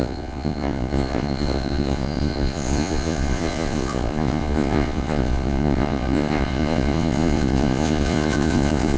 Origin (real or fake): fake